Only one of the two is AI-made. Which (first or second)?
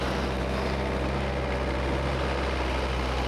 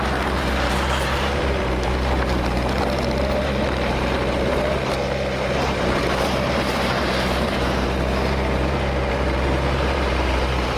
second